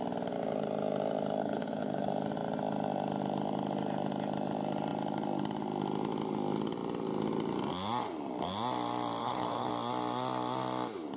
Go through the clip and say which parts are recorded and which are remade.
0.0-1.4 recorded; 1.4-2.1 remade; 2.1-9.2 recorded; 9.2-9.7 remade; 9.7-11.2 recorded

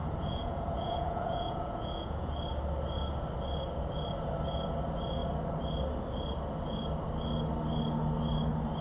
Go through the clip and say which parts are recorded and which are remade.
0.0-2.3 remade; 2.3-8.8 recorded

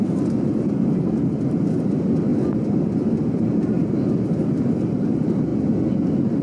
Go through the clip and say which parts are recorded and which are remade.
0.0-2.3 remade; 2.3-3.3 recorded; 3.3-5.5 remade; 5.5-6.4 recorded

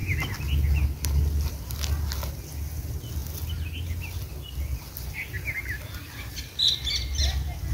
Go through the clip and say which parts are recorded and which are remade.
0.0-7.7 recorded

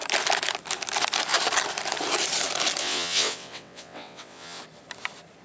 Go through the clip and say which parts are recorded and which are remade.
0.0-2.8 recorded; 2.8-4.6 remade; 4.6-5.4 recorded